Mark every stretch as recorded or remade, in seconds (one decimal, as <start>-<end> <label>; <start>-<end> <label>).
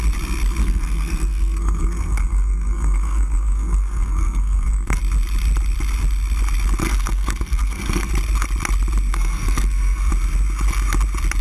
0.0-0.6 recorded; 0.6-5.0 remade; 5.0-6.8 recorded; 6.8-8.1 remade; 8.1-9.1 recorded; 9.1-10.1 remade; 10.1-11.4 recorded